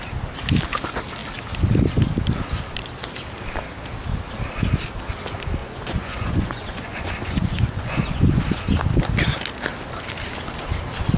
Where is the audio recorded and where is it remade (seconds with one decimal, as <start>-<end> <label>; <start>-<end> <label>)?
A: 0.0-5.6 recorded; 5.6-8.4 remade; 8.4-11.2 recorded